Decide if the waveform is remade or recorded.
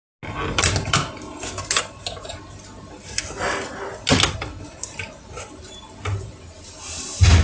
recorded